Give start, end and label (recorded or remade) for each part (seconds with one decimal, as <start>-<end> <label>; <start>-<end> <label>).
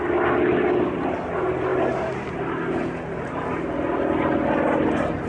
0.0-5.3 recorded